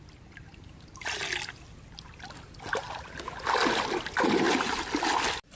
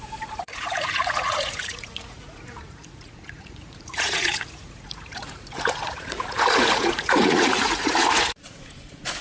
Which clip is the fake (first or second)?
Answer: second